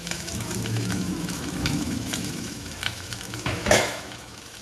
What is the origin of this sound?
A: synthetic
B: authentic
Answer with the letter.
A